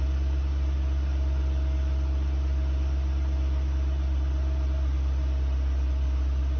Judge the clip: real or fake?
real